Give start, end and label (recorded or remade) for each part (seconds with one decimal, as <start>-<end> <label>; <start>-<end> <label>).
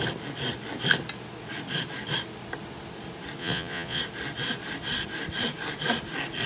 0.0-3.4 recorded; 3.4-4.0 remade; 4.0-6.5 recorded